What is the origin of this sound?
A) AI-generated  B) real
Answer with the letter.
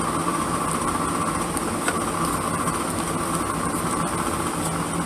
B